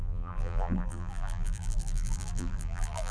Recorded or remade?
remade